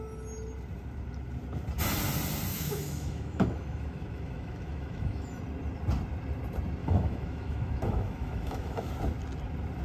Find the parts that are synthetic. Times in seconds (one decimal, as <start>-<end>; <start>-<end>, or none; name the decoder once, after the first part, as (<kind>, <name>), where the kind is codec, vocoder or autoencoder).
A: 2.5-5.4 (autoencoder, DAC-VAE); 6.8-8.9

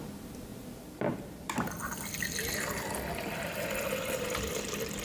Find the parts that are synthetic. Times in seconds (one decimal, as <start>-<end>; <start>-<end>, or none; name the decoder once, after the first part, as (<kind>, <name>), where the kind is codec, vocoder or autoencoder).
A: 0.5-3.5 (vocoder, BigVGAN v2)